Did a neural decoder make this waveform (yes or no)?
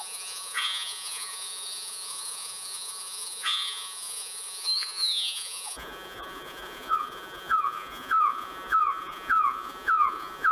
yes